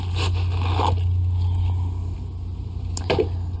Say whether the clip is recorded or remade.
recorded